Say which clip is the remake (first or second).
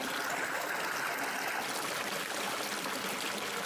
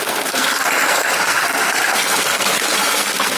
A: second